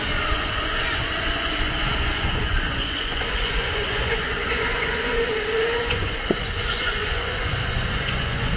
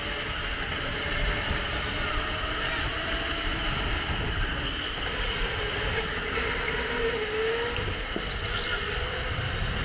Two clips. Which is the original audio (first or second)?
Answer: second